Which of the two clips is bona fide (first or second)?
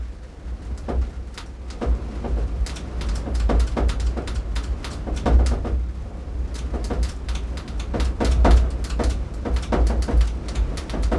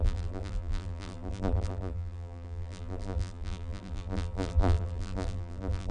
first